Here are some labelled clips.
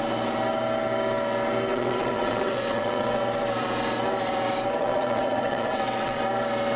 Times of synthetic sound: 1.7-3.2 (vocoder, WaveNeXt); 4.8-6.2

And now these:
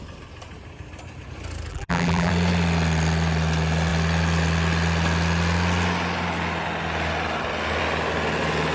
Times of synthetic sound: 1.7-2.3 (vocoder, BigVGAN v2)

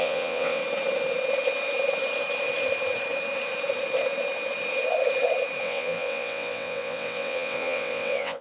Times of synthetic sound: 0.0-0.6 (vocoder, WaveNeXt); 5.6-8.4

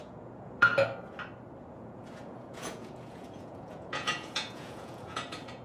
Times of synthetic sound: 0.0-0.7 (vocoder, Vocos); 1.7-5.6

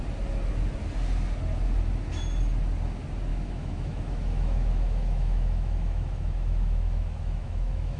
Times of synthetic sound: 3.3-8.0 (autoencoder, DAC-VAE)

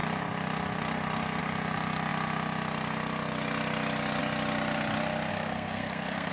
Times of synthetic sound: 5.3-6.3 (codec, SNAC)

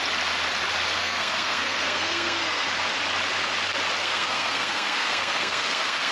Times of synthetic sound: 1.0-2.7 (codec, SNAC); 4.0-6.1